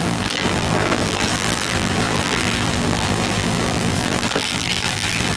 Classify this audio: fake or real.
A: fake